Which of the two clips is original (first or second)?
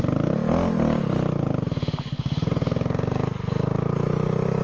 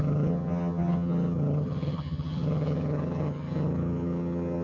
first